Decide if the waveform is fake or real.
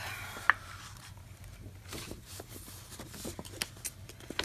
real